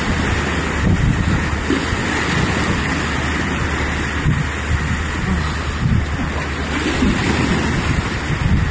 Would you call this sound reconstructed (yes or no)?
no